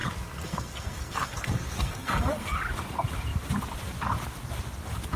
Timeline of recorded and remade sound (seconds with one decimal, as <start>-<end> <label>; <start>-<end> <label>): 0.0-2.6 remade; 2.6-5.2 recorded